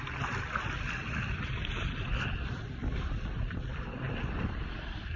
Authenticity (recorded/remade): remade